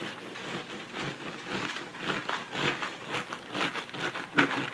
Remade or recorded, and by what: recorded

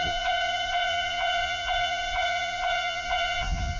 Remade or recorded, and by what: remade, vocoder, Vocos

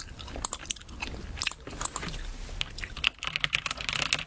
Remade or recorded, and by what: recorded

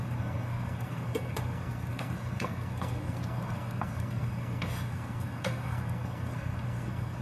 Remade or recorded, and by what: remade, codec, SNAC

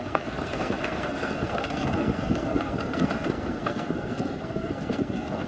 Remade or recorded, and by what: remade, codec, SNAC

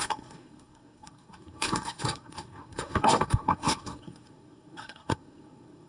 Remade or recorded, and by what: remade, codec, SNAC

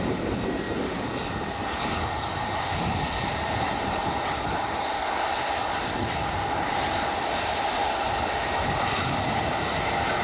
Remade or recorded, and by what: recorded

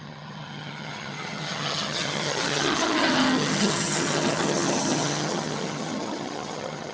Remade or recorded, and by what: remade, vocoder, HiFi-GAN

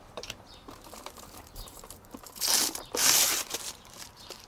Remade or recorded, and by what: remade, vocoder, BigVGAN v2